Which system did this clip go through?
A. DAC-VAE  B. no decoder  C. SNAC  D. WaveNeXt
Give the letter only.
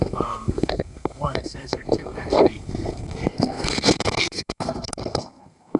C